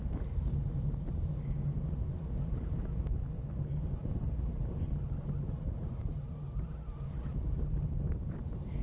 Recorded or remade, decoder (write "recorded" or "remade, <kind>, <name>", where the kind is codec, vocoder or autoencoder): recorded